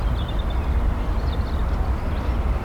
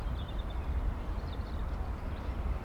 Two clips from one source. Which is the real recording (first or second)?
first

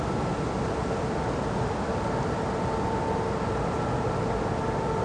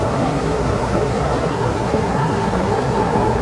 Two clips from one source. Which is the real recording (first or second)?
first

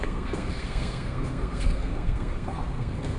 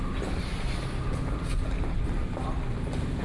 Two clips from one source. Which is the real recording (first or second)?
second